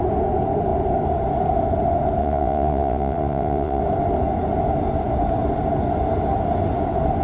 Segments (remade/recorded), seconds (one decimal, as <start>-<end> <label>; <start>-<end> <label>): 0.0-2.2 recorded; 2.2-3.8 remade; 3.8-7.2 recorded